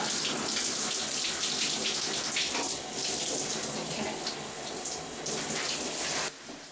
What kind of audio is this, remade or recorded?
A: recorded